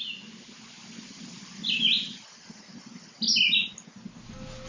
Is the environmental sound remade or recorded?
recorded